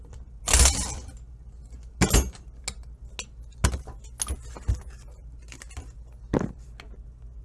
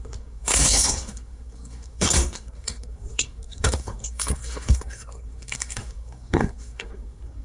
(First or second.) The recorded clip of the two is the first